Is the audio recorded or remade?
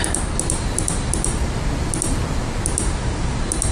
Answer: recorded